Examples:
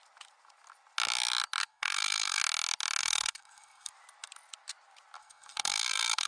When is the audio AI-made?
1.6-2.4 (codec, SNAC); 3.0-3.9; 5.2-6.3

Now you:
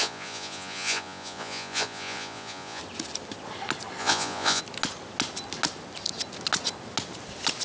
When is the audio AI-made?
0.0-2.8 (vocoder, Vocos); 4.0-4.6

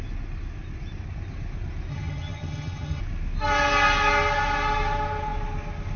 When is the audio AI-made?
1.9-3.0 (vocoder, HiFi-GAN)

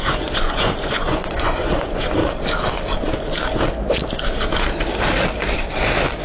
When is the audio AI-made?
0.0-2.2 (vocoder, Vocos)